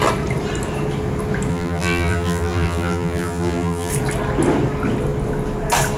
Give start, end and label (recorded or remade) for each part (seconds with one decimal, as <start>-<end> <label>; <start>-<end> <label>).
0.0-1.5 recorded; 1.5-3.9 remade; 3.9-6.0 recorded